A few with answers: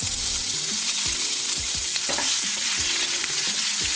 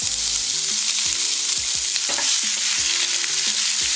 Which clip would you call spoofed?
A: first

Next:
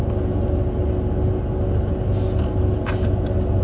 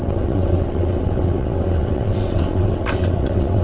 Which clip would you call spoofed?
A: second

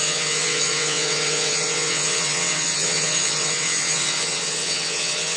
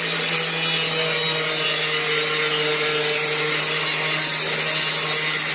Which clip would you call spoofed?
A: first